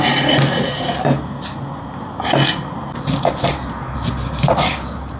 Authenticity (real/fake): real